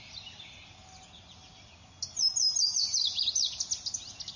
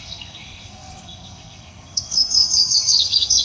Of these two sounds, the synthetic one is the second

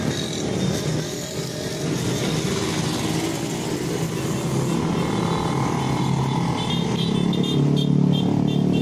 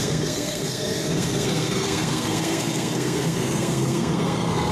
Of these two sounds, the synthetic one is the second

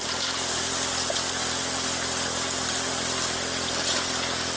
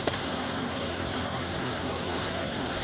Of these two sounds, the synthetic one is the second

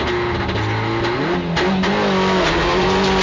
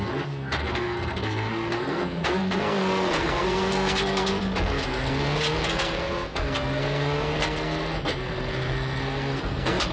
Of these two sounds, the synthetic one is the second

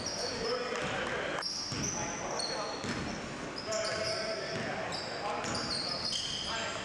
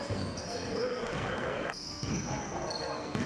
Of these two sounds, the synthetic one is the second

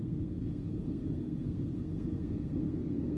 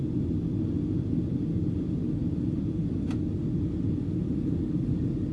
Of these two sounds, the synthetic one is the first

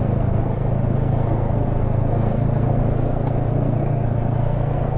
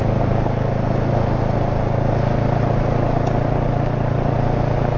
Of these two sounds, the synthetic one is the first